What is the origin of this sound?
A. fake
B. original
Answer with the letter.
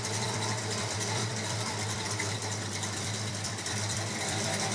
A